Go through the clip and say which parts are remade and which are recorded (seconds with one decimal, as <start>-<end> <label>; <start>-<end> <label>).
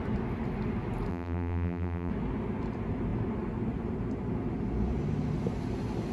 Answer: 0.0-1.1 recorded; 1.1-2.1 remade; 2.1-6.1 recorded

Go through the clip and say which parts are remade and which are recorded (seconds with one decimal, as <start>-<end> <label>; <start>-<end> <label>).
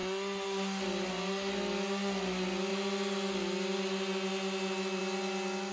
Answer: 0.0-5.7 recorded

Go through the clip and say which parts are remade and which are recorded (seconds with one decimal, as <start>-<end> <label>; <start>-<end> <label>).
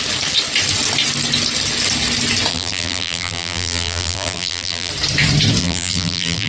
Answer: 0.0-2.5 recorded; 2.5-4.9 remade; 4.9-5.6 recorded; 5.6-6.5 remade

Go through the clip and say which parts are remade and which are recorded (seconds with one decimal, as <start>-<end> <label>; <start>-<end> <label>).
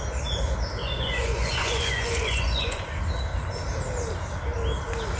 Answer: 0.0-0.8 recorded; 0.8-2.8 remade; 2.8-5.2 recorded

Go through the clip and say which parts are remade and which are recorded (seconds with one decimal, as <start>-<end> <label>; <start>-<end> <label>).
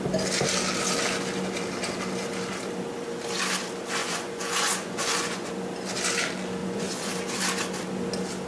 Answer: 0.0-4.0 recorded; 4.0-5.5 remade; 5.5-6.6 recorded; 6.6-7.1 remade; 7.1-8.5 recorded